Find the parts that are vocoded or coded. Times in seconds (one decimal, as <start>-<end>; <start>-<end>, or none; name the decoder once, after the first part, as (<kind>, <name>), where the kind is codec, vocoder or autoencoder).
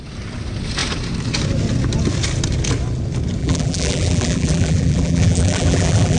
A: 3.4-6.2 (vocoder, BigVGAN v2)